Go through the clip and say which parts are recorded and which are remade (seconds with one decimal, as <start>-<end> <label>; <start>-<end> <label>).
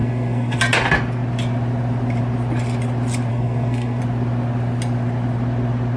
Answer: 0.0-0.6 remade; 0.6-3.3 recorded; 3.3-4.0 remade; 4.0-6.0 recorded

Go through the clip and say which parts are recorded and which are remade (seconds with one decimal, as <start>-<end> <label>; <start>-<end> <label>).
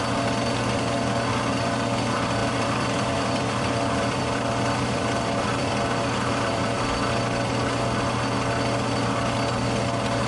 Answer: 0.0-2.4 recorded; 2.4-6.8 remade; 6.8-10.3 recorded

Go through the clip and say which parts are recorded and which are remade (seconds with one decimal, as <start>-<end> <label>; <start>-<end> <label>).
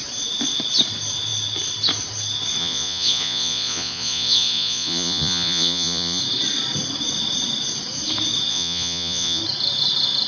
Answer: 0.0-2.6 recorded; 2.6-6.2 remade; 6.2-8.5 recorded; 8.5-9.4 remade; 9.4-10.3 recorded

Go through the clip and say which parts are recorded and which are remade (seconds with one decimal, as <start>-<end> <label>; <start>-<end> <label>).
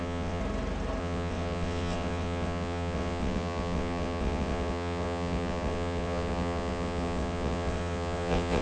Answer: 0.0-0.4 remade; 0.4-1.0 recorded; 1.0-8.6 remade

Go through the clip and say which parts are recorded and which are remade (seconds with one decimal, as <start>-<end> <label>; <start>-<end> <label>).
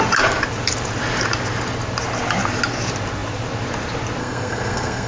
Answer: 0.0-4.2 recorded; 4.2-5.1 remade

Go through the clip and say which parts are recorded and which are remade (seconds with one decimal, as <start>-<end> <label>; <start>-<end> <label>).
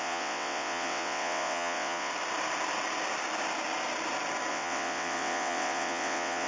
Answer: 0.0-2.1 remade; 2.1-4.5 recorded; 4.5-6.5 remade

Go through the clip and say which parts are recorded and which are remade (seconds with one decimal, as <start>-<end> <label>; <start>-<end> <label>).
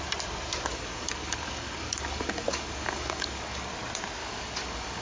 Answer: 0.0-0.7 recorded; 0.7-3.7 remade; 3.7-4.2 recorded; 4.2-5.0 remade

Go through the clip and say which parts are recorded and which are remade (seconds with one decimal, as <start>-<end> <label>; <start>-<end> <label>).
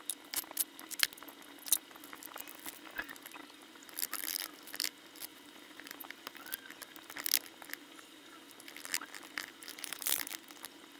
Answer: 0.0-5.3 recorded; 5.3-6.1 remade; 6.1-9.7 recorded; 9.7-10.3 remade; 10.3-11.0 recorded